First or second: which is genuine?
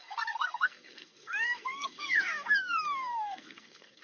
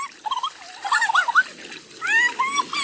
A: second